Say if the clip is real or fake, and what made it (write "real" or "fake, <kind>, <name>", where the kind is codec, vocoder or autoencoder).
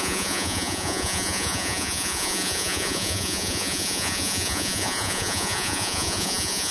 fake, vocoder, Vocos